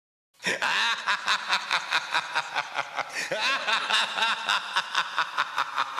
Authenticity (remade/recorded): recorded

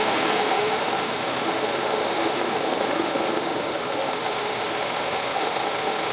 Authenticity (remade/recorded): remade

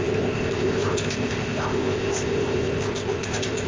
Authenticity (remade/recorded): remade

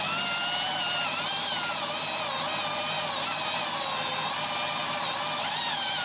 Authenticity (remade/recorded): recorded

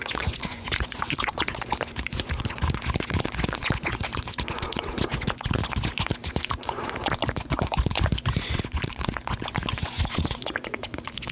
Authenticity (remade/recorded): remade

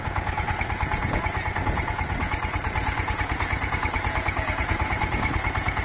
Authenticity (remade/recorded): remade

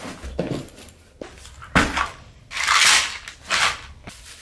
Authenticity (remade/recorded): recorded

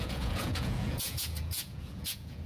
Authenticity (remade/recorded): remade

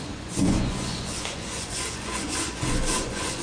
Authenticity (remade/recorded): remade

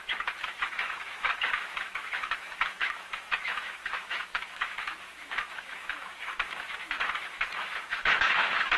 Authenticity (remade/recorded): remade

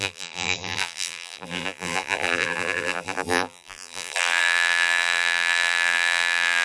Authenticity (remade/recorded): remade